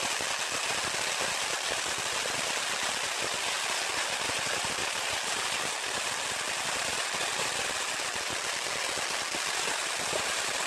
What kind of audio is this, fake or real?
real